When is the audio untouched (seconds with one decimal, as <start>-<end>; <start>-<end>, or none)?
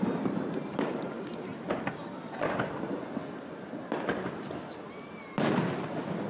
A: 0.0-6.3